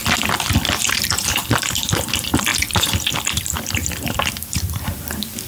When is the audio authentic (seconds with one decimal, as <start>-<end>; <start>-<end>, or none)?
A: 0.0-1.2